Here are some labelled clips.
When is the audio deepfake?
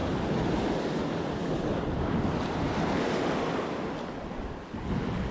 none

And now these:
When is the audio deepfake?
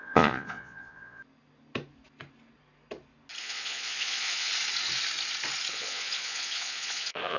0.0-1.2 (vocoder, Vocos); 3.4-4.5; 5.7-7.4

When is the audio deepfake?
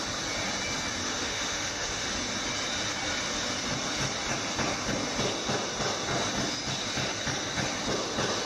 1.0-2.1 (autoencoder, DAC-VAE)